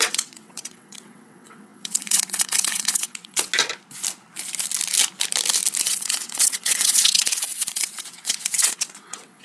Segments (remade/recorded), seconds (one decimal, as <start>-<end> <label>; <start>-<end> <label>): 0.0-3.5 remade; 3.5-5.8 recorded; 5.8-9.4 remade